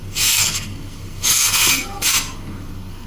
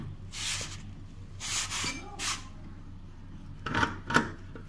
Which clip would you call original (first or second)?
second